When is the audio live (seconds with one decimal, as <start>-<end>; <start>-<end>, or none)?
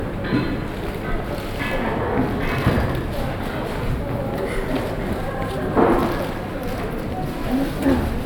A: 0.0-8.3